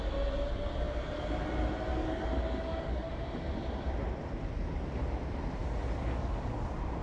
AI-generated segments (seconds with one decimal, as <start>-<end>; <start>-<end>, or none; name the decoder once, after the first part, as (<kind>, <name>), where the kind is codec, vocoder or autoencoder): 1.9-3.1 (codec, DAC); 5.6-6.5